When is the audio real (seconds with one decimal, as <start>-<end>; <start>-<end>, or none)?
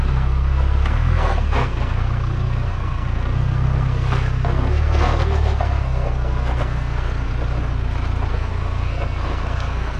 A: 7.3-8.3